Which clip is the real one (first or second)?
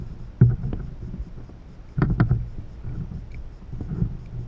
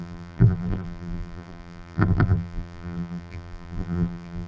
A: first